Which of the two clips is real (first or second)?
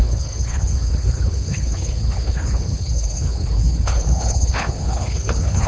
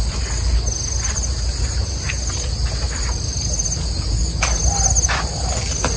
second